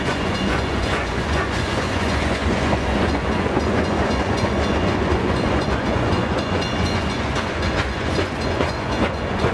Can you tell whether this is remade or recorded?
remade